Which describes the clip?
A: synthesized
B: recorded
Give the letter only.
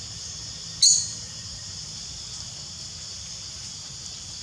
B